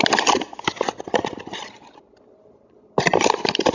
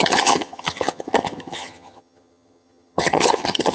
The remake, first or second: second